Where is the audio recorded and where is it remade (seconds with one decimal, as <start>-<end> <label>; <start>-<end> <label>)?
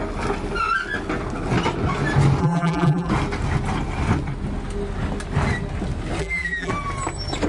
0.0-2.4 recorded; 2.4-3.1 remade; 3.1-6.2 recorded; 6.2-6.7 remade; 6.7-7.5 recorded